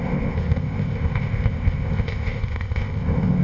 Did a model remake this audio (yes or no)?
yes